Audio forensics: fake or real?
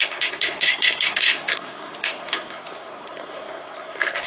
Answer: fake